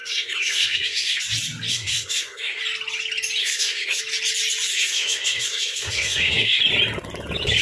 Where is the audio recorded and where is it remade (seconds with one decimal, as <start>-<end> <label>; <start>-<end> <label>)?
0.0-1.2 remade; 1.2-1.7 recorded; 1.7-2.6 remade; 2.6-3.4 recorded; 3.4-4.0 remade; 4.0-4.7 recorded; 4.7-6.6 remade; 6.6-7.6 recorded